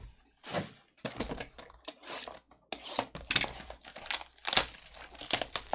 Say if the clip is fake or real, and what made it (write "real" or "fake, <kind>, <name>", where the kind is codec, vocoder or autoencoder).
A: real